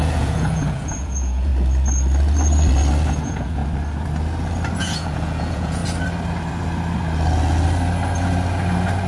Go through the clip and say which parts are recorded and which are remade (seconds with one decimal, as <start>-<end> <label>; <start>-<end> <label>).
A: 0.0-1.5 remade; 1.5-3.2 recorded; 3.2-3.6 remade; 3.6-4.8 recorded; 4.8-5.8 remade; 5.8-9.1 recorded